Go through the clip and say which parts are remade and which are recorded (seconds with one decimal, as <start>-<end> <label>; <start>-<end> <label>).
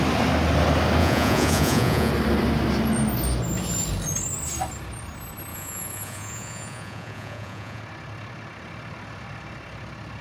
0.0-1.0 recorded; 1.0-2.1 remade; 2.1-5.5 recorded; 5.5-7.8 remade; 7.8-10.2 recorded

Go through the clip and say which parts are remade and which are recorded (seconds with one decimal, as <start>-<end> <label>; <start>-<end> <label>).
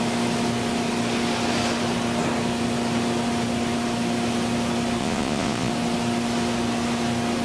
0.0-5.0 recorded; 5.0-5.7 remade; 5.7-7.4 recorded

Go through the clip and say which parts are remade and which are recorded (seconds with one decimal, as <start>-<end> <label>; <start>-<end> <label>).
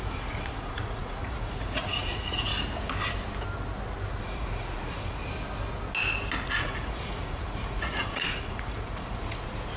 0.0-2.5 remade; 2.5-4.2 recorded; 4.2-5.2 remade; 5.2-6.6 recorded; 6.6-9.8 remade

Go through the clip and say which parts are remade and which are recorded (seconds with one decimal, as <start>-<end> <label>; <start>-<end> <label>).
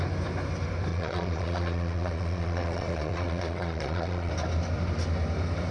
0.0-0.9 recorded; 0.9-4.3 remade; 4.3-5.7 recorded